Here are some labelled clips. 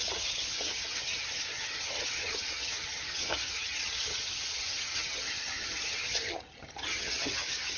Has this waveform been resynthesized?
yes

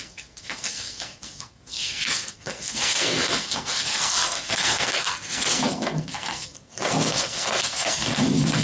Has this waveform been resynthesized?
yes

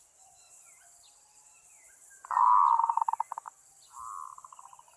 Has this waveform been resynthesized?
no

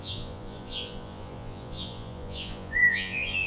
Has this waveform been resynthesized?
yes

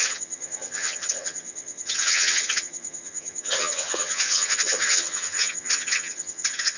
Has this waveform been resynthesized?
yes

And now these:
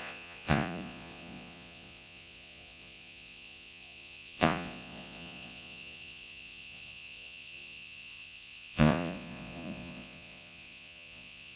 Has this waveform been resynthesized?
yes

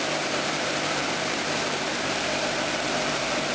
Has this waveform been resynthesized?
yes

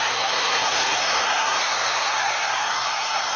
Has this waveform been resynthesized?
yes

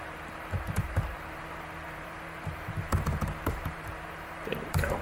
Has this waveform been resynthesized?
yes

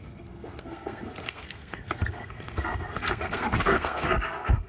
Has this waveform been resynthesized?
yes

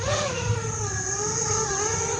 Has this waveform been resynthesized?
no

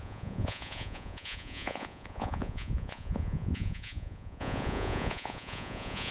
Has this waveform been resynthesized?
yes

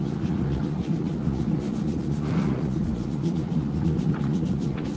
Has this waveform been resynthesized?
yes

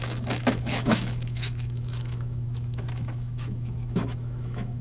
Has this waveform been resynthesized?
yes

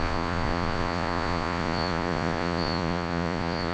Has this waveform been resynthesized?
yes